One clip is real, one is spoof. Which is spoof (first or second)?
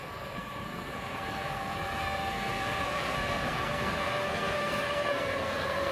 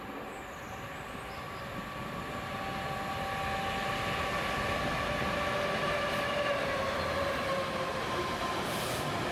first